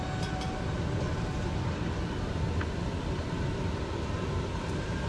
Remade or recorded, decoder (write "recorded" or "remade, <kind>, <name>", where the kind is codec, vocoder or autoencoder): recorded